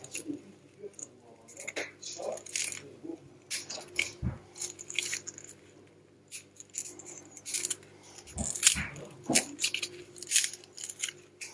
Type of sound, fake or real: real